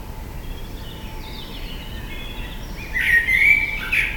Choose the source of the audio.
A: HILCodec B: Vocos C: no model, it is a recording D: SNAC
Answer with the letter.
C